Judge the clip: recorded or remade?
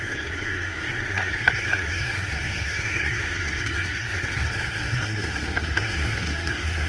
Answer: remade